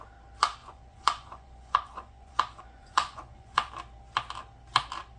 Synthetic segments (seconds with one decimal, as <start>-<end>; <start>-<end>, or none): 0.6-3.7